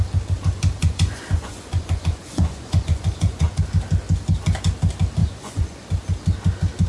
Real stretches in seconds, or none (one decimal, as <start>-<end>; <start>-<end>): 0.0-0.8; 3.6-5.2; 5.8-6.9